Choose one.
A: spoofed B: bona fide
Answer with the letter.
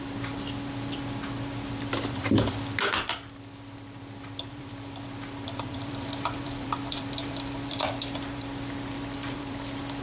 A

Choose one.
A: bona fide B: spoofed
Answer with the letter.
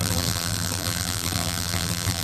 B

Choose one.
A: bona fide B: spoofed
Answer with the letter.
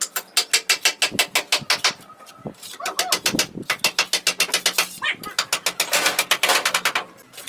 A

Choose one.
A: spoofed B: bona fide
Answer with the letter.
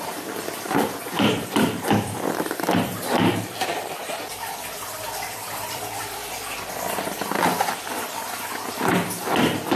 A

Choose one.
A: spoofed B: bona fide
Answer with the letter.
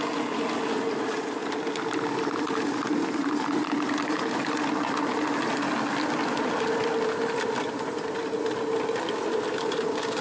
B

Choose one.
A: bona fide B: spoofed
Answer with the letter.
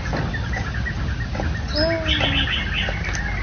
A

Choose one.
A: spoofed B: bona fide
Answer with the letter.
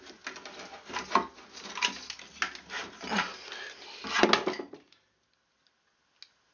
B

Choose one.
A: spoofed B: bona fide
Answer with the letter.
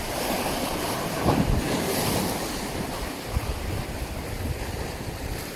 A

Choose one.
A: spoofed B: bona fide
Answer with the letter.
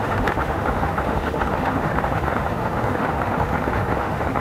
A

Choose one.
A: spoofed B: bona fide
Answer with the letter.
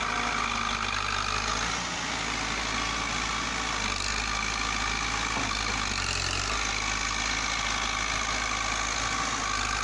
B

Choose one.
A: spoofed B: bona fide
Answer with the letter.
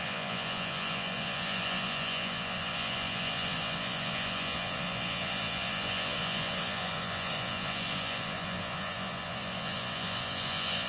A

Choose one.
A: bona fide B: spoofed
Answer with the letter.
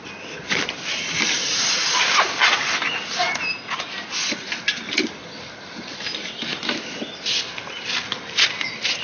A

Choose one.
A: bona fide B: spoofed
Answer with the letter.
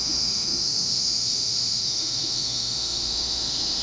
B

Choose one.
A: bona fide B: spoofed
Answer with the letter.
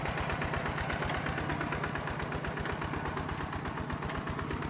A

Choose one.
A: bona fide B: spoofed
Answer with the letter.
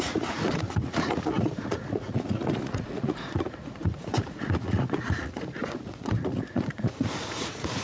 B